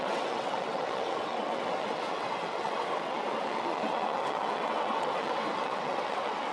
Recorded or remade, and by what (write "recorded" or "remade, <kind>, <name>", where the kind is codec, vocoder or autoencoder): remade, vocoder, WaveNeXt